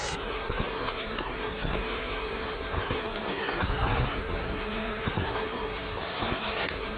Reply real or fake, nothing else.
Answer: fake